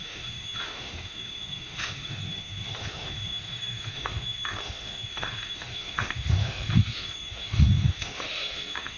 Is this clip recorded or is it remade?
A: remade